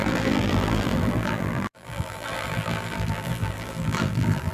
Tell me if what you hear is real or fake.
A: fake